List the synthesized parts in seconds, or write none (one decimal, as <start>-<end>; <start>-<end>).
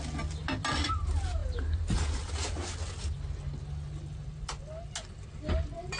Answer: none